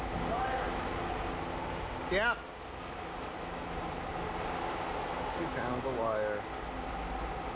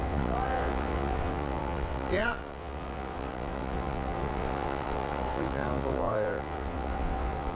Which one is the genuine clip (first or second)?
first